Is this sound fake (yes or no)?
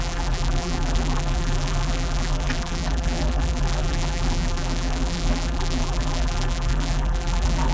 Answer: yes